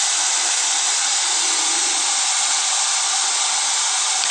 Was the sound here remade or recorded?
recorded